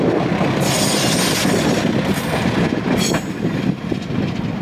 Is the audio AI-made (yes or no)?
no